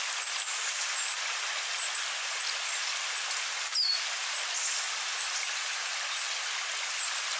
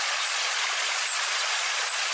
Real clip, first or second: first